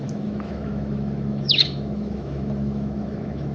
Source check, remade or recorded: remade